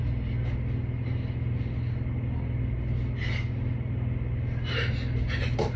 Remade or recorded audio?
recorded